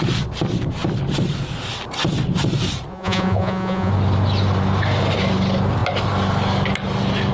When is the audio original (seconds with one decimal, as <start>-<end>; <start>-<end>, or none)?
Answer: 0.0-2.9; 3.9-7.3